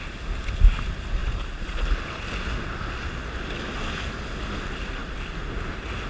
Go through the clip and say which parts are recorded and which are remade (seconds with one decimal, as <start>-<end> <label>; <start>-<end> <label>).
0.0-6.1 recorded